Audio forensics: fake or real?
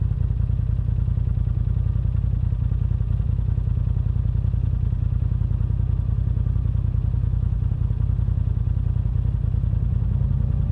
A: real